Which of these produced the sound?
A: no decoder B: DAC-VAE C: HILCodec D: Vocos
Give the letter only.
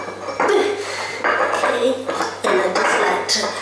A